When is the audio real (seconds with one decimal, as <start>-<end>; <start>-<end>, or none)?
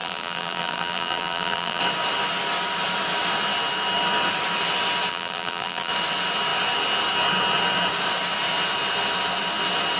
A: 1.8-5.1; 5.9-10.0